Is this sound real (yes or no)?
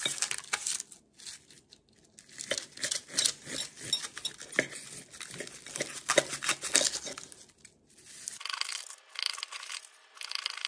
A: yes